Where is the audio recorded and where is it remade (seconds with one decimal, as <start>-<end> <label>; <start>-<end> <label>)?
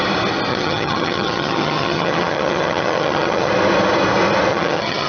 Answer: 0.0-0.5 recorded; 0.5-3.5 remade; 3.5-4.5 recorded; 4.5-5.1 remade